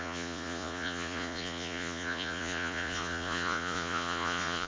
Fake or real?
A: fake